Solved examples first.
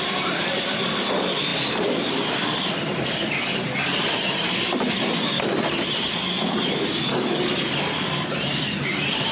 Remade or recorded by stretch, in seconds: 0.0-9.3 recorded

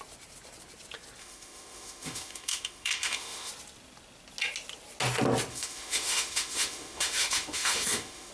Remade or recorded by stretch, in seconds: 0.0-1.2 recorded; 1.2-3.5 remade; 3.5-5.5 recorded; 5.5-8.3 remade